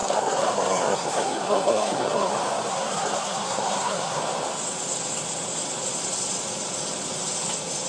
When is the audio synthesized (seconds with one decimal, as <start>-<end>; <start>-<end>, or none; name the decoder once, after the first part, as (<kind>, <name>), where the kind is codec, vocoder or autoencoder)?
0.0-2.3 (codec, SNAC); 2.7-4.2